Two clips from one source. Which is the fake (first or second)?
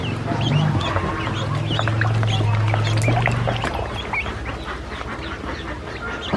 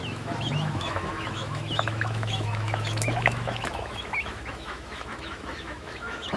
second